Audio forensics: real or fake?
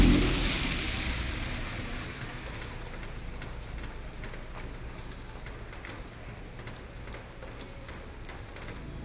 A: real